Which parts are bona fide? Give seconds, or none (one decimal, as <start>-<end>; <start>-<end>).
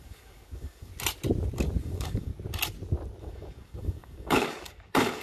0.9-1.8; 2.3-3.2